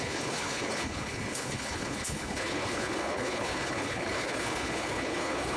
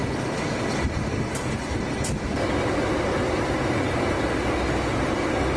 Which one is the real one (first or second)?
second